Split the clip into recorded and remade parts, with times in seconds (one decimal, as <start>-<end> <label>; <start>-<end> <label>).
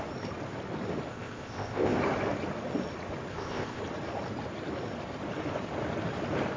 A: 0.0-1.1 recorded; 1.1-2.0 remade; 2.0-3.3 recorded; 3.3-3.8 remade; 3.8-6.6 recorded